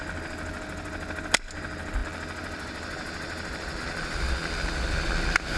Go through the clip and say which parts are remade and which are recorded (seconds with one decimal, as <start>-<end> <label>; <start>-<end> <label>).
0.0-5.6 recorded